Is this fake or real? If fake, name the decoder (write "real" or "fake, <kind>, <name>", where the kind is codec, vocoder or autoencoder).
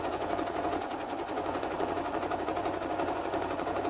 fake, vocoder, Vocos